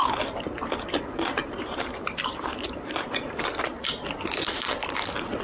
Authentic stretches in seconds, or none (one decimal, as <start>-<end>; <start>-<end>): 0.0-1.4; 3.3-3.7; 4.7-5.4